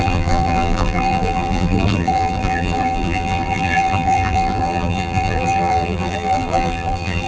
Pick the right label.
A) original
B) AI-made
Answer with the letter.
B